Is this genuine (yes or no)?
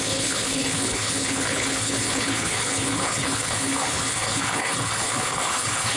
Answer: no